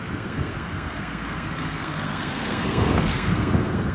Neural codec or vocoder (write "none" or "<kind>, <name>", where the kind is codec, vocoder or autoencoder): codec, SNAC